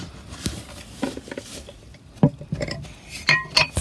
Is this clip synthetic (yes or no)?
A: no